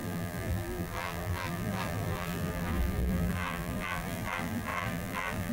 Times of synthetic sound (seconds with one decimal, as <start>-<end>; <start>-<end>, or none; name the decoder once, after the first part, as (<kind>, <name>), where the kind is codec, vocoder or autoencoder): 0.0-5.5 (vocoder, BigVGAN v2)